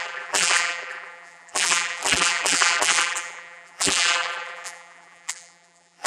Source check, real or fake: fake